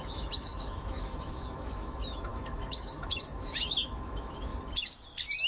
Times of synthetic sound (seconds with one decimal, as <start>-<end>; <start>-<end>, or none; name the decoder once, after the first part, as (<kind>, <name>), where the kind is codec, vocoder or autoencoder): 0.0-4.5 (autoencoder, DAC-VAE)